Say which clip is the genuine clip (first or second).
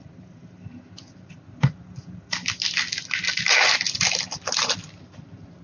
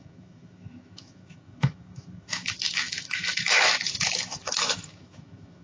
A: first